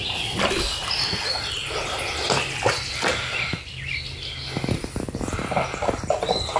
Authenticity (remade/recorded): recorded